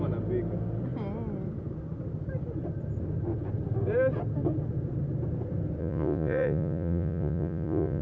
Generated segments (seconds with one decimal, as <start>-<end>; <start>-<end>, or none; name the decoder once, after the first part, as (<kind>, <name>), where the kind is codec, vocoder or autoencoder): 5.8-8.0 (vocoder, Vocos)